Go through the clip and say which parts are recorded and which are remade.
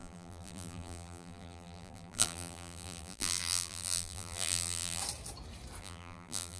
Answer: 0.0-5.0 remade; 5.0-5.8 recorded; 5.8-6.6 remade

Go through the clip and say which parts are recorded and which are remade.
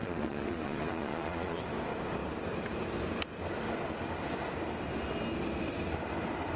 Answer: 0.0-1.6 remade; 1.6-6.6 recorded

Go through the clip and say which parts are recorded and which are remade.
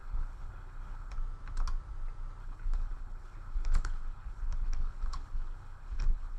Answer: 0.0-1.1 remade; 1.1-2.4 recorded; 2.4-6.4 remade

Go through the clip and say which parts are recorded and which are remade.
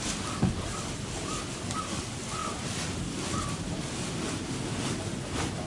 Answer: 0.0-5.7 recorded